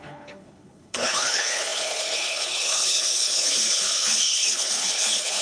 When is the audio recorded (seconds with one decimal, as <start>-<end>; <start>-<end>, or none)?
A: none